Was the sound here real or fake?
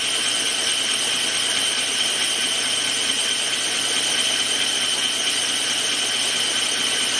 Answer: real